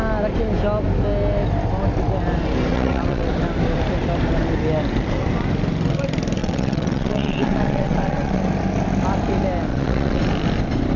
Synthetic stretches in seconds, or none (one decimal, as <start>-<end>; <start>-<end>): 2.7-3.3; 6.4-8.4; 9.7-10.2